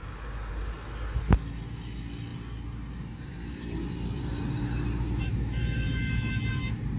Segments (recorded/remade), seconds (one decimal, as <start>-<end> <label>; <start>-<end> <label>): 0.0-7.0 recorded